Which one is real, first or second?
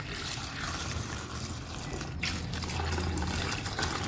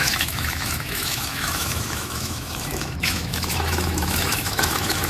first